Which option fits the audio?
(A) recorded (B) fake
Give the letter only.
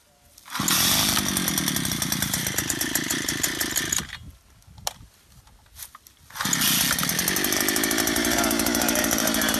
A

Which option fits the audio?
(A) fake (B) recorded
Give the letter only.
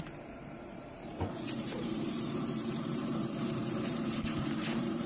A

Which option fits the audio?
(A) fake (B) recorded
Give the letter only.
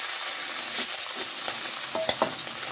B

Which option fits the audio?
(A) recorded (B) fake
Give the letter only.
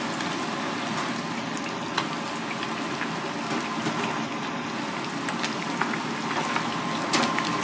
A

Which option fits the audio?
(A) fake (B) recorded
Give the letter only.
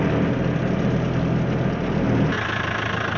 B